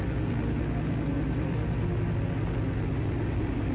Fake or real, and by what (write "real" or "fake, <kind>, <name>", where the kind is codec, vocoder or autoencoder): real